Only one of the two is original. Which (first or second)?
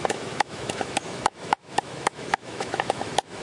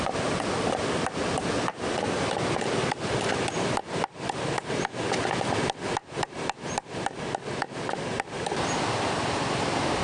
second